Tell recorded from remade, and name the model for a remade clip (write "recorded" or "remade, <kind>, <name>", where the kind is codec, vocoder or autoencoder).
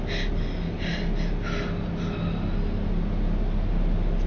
recorded